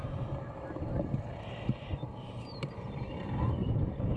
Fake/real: fake